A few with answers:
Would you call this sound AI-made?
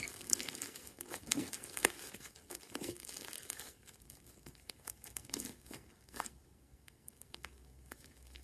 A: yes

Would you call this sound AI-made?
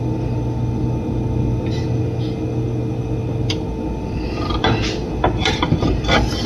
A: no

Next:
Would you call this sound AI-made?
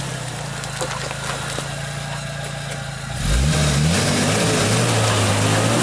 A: no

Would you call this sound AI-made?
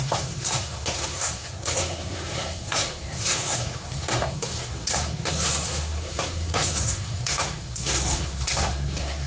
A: yes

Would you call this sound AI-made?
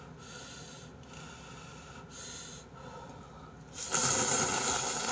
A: no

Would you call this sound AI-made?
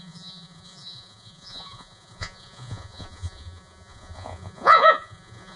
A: yes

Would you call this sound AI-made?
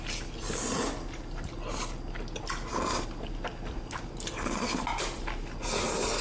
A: no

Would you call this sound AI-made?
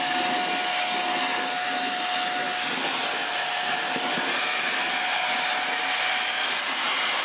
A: no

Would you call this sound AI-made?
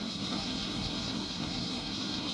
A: yes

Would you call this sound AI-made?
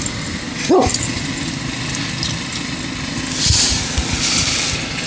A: no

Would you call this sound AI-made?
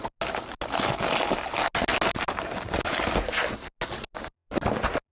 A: no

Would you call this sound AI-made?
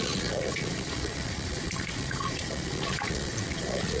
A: yes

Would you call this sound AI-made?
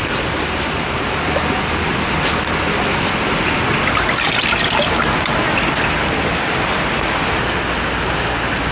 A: no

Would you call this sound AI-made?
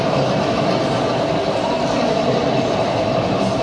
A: no